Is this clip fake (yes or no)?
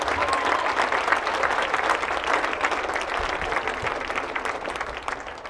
no